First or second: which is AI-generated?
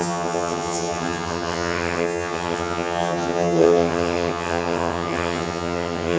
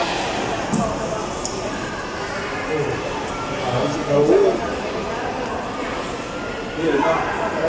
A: first